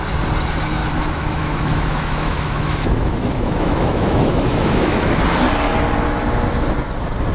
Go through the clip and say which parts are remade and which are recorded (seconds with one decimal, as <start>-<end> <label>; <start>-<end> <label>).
0.0-0.8 recorded; 0.8-5.2 remade; 5.2-7.3 recorded